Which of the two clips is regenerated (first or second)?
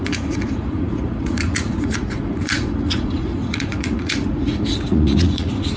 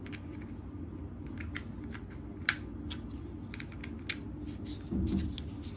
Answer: first